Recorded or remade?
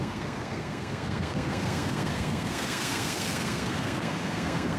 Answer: remade